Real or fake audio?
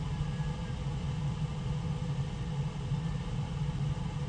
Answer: real